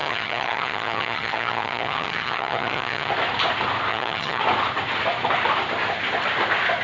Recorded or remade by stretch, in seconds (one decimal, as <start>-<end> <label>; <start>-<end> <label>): 0.0-3.1 remade; 3.1-3.9 recorded; 3.9-4.4 remade; 4.4-6.8 recorded